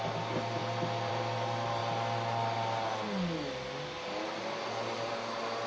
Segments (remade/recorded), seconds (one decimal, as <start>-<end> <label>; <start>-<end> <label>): 0.0-5.7 recorded